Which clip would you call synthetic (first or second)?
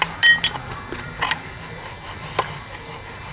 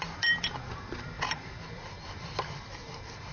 second